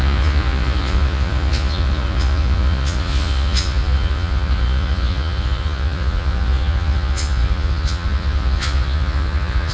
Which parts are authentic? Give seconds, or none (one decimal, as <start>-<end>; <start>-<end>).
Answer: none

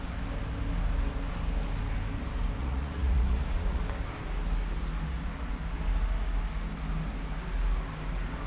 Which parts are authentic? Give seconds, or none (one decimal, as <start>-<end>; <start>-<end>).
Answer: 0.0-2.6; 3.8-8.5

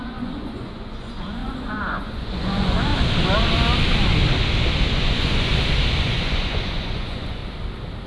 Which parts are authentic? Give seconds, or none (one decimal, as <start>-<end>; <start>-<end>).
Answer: 2.9-4.9; 5.5-6.0; 7.4-8.1

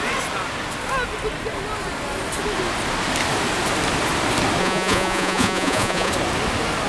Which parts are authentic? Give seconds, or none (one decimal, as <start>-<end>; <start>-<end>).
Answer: 0.0-4.6; 6.1-6.9